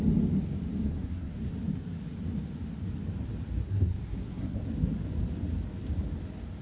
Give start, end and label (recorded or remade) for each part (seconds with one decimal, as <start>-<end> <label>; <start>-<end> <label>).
0.0-0.8 recorded; 0.8-1.5 remade; 1.5-3.6 recorded; 3.6-4.6 remade; 4.6-6.6 recorded